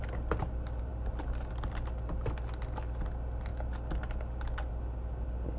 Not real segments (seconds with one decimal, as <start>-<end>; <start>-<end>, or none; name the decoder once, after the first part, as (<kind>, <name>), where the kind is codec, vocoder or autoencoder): none